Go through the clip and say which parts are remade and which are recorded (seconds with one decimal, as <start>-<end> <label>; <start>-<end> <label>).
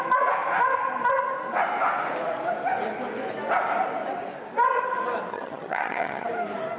0.0-5.3 recorded; 5.3-6.3 remade; 6.3-6.8 recorded